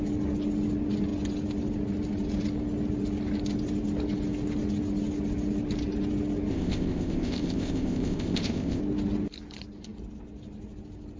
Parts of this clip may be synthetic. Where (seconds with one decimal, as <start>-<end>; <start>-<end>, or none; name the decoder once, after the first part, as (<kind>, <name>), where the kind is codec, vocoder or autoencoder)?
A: 6.5-8.8 (codec, ZipCodec)